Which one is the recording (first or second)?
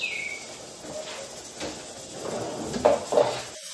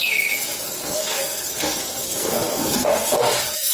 first